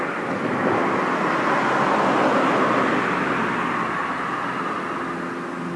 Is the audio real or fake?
real